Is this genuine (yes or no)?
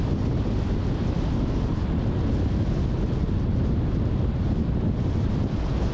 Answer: yes